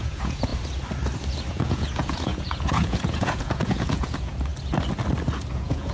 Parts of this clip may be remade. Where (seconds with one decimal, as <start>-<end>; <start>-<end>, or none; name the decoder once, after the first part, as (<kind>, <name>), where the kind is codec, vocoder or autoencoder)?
0.0-0.5 (vocoder, Vocos); 1.5-4.5; 5.5-5.9